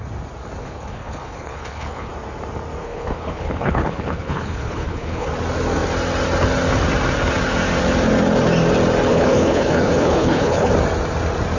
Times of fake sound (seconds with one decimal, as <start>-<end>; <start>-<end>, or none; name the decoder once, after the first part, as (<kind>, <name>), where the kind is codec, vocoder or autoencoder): 0.6-2.1 (codec, HILCodec); 2.8-5.3; 9.1-10.7